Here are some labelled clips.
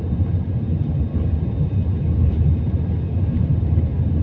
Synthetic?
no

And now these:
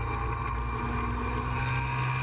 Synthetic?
no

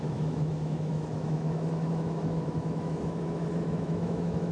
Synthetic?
yes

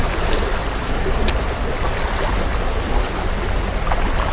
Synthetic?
no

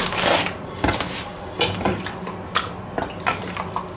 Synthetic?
no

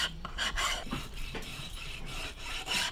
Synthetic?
yes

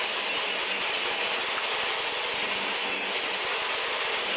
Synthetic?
no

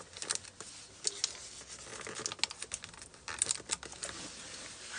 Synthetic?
no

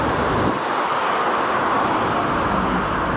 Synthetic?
no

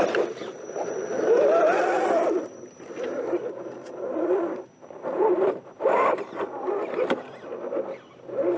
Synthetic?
no